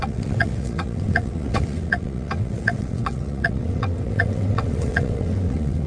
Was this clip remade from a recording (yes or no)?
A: yes